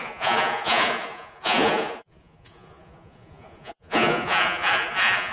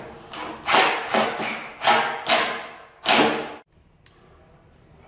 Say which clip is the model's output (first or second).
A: first